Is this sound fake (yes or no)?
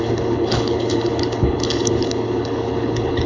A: yes